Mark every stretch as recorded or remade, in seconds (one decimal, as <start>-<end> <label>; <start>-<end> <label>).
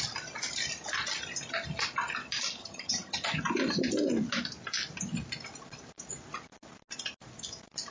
0.0-2.6 recorded; 2.6-3.4 remade; 3.4-7.9 recorded